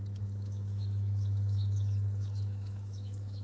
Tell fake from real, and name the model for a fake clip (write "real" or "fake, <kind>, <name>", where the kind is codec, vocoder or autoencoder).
fake, autoencoder, DAC-VAE